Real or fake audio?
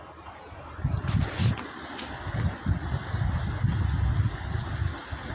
real